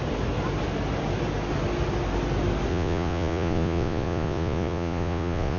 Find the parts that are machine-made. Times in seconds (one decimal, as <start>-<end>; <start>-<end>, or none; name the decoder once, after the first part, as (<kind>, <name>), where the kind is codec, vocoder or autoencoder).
2.7-5.6 (vocoder, Vocos)